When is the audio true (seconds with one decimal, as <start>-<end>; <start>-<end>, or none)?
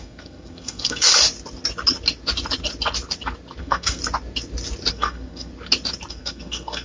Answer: 1.1-3.6; 4.0-4.9; 5.5-6.1